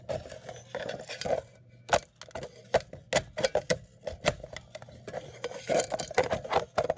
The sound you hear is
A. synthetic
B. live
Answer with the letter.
B